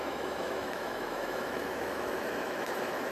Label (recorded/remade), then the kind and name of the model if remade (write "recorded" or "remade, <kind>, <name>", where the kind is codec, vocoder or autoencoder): remade, autoencoder, DAC-VAE